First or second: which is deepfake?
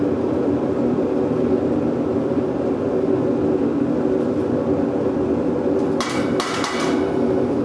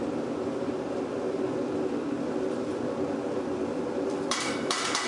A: second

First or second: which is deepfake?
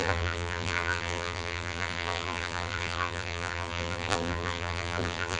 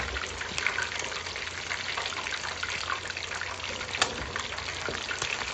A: first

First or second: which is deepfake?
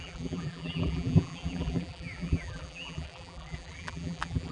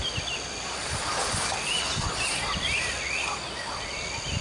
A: first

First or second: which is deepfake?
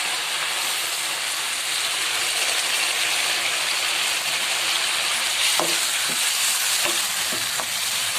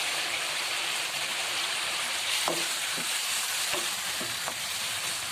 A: second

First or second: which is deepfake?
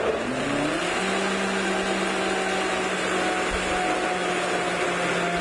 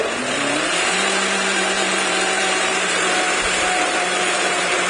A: second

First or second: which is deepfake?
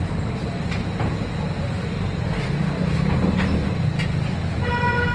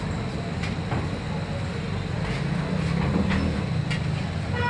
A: first